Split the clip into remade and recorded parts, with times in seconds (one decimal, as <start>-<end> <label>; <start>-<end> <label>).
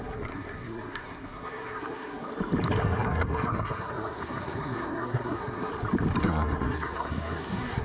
0.0-2.3 remade; 2.3-2.8 recorded; 2.8-5.7 remade; 5.7-6.2 recorded; 6.2-7.8 remade